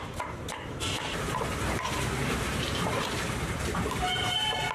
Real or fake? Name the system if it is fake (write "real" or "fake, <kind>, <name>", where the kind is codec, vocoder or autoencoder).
fake, vocoder, BigVGAN v2